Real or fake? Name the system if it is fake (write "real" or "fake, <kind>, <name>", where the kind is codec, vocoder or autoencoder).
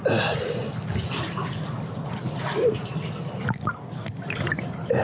real